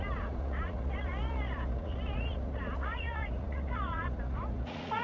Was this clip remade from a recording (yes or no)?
yes